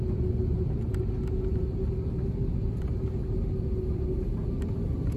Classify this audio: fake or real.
real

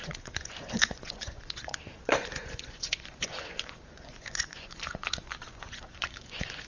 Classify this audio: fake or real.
fake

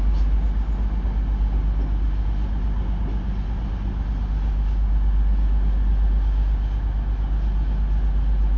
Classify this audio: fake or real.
real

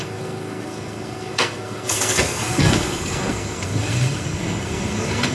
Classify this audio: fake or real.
fake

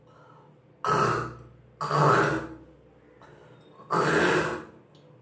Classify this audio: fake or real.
real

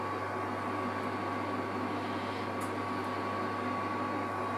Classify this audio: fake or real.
real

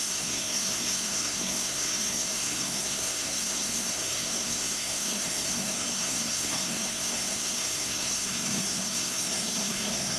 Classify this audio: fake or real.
fake